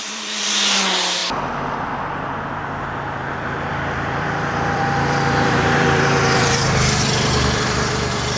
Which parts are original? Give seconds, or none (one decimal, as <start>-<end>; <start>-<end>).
1.2-3.7